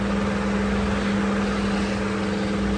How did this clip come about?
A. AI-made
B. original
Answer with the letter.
B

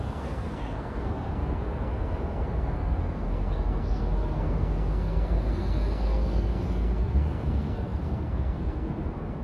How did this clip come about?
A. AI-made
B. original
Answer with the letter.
A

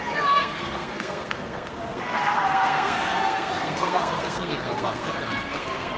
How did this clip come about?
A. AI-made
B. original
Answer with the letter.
A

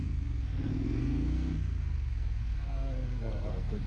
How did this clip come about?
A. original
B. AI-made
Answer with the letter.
B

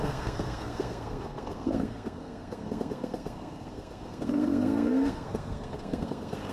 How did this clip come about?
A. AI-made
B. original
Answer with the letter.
A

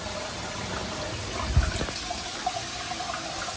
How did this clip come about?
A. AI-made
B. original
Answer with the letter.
B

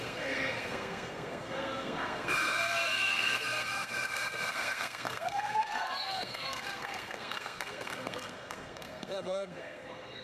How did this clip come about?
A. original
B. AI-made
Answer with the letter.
B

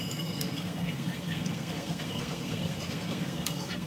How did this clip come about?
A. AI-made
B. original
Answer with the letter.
A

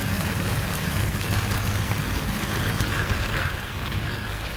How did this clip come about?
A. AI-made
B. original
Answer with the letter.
A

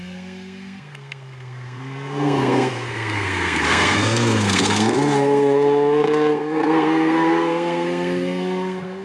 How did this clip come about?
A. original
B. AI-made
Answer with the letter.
B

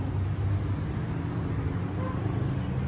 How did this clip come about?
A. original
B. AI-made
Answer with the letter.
A